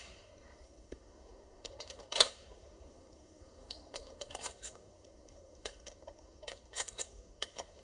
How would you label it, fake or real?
fake